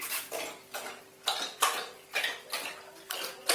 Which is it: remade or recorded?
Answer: recorded